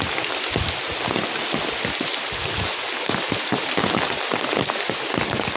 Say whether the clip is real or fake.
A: real